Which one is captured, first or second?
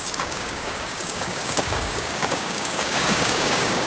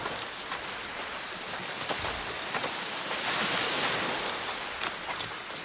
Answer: second